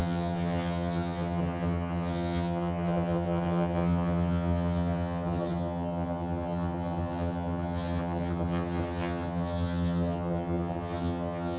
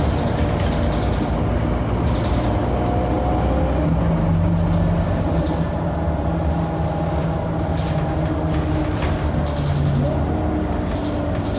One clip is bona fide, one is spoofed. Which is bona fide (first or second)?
second